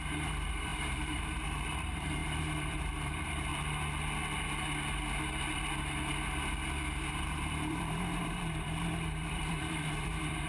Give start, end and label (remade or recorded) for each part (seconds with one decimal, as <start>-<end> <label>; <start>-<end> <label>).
0.0-3.5 remade; 3.5-7.1 recorded; 7.1-10.5 remade